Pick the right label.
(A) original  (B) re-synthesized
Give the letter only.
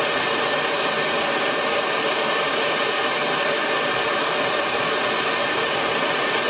A